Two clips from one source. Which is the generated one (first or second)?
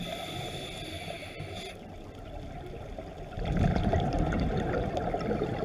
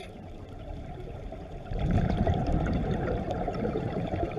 second